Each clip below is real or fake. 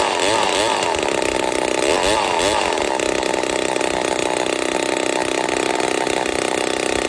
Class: real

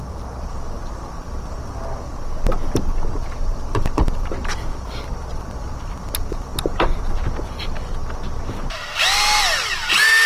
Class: real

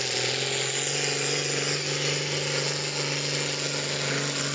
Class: real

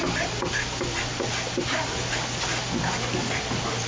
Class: real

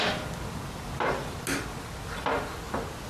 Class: real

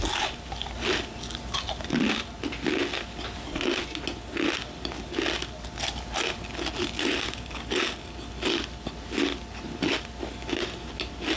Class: real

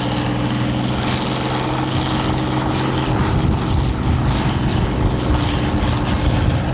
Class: real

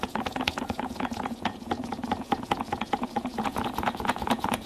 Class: fake